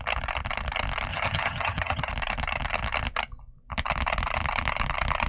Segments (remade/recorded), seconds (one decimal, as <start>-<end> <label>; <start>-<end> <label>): 0.0-1.1 recorded; 1.1-2.1 remade; 2.1-5.3 recorded